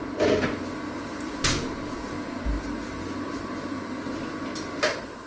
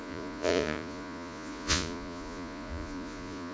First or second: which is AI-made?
second